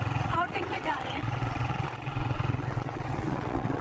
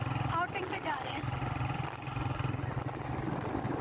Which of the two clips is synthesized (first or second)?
first